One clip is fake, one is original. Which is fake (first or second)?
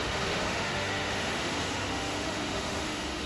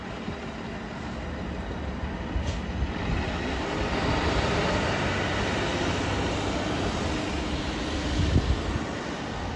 first